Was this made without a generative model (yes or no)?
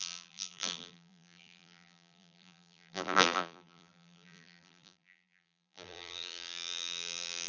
no